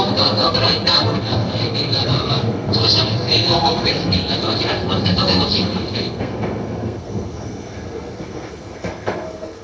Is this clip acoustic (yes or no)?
no